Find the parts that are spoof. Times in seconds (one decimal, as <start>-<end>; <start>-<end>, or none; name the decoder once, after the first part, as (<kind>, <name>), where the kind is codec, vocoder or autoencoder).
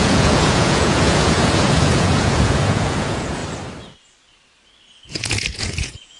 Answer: 0.0-3.4 (vocoder, Vocos); 5.1-6.2